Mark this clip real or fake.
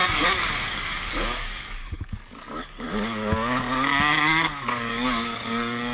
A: fake